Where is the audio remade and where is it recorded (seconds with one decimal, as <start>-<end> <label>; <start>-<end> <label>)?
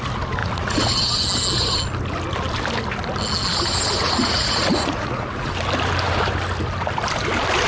0.0-0.4 recorded; 0.4-1.0 remade; 1.0-4.0 recorded; 4.0-5.5 remade; 5.5-7.7 recorded